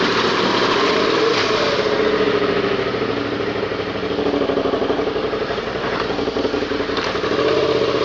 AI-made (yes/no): no